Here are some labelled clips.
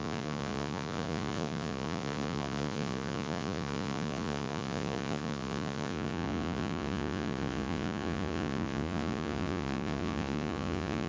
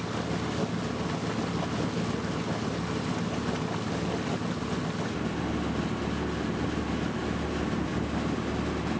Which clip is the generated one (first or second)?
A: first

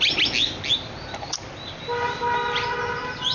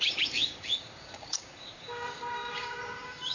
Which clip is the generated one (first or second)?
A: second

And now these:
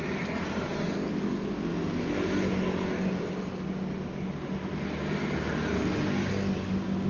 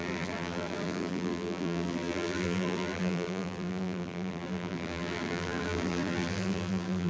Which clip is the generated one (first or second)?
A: second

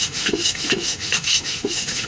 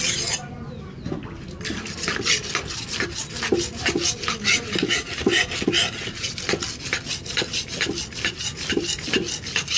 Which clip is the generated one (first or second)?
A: first